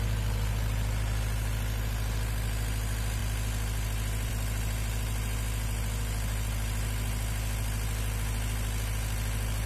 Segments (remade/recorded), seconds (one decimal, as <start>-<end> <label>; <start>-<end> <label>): 0.0-9.7 recorded